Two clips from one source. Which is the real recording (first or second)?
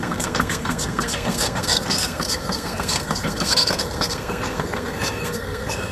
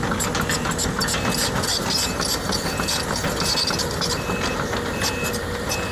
second